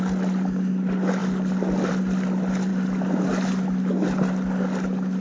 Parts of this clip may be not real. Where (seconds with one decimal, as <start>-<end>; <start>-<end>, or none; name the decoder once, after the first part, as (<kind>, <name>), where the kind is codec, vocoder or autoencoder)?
none